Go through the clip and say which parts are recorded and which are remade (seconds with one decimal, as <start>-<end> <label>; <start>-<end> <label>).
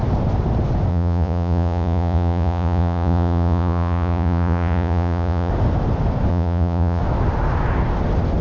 0.0-0.9 recorded; 0.9-5.5 remade; 5.5-6.3 recorded; 6.3-7.0 remade; 7.0-8.4 recorded